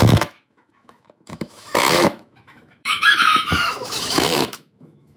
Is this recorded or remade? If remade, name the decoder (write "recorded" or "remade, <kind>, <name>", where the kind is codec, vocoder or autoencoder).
remade, autoencoder, DAC-VAE